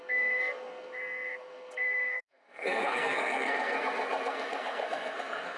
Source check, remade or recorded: remade